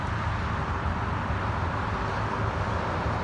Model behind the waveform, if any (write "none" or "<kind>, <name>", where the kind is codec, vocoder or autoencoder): none